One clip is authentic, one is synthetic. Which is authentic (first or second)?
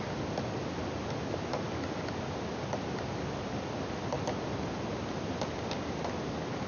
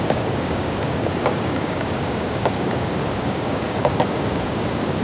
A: first